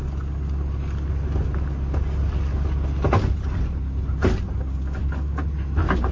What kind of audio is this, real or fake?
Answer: real